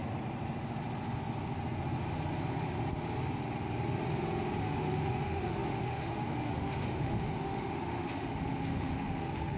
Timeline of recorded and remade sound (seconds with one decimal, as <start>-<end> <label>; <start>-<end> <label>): 0.0-4.6 recorded; 4.6-9.6 remade